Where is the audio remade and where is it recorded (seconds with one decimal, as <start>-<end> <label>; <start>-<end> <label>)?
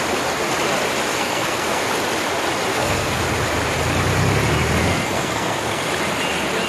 0.0-1.1 recorded; 1.1-1.9 remade; 1.9-2.7 recorded; 2.7-3.2 remade; 3.2-4.8 recorded; 4.8-5.9 remade; 5.9-6.7 recorded